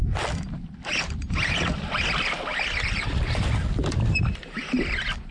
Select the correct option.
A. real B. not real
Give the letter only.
A